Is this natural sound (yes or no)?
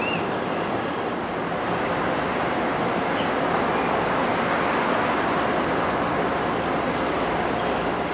yes